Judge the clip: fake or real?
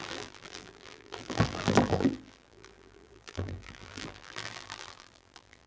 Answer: fake